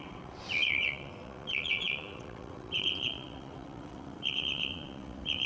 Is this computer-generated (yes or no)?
yes